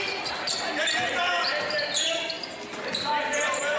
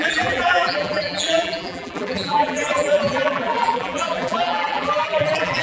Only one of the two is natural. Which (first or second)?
first